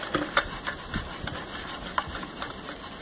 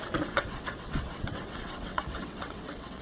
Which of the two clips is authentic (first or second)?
first